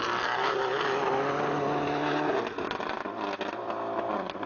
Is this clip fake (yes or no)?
no